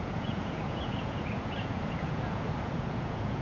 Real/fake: fake